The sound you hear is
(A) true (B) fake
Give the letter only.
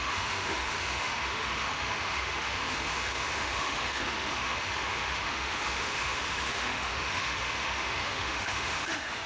B